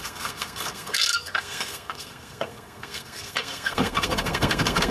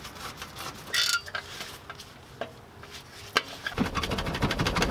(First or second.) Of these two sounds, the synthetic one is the first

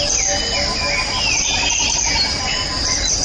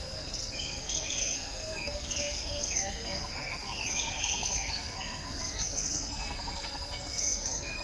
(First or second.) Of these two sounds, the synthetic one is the second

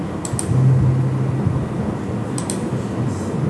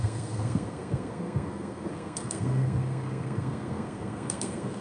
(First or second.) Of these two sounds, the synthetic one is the second